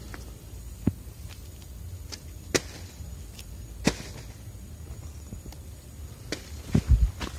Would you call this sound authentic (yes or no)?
yes